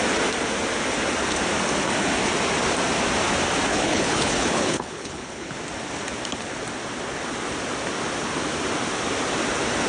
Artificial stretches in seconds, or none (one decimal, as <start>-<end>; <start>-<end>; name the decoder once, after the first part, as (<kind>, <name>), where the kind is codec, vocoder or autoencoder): 3.7-5.5 (codec, HILCodec)